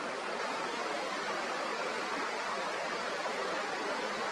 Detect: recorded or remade recorded